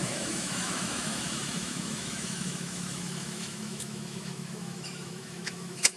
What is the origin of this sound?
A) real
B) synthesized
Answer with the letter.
B